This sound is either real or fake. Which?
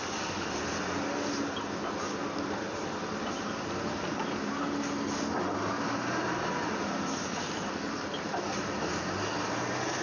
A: real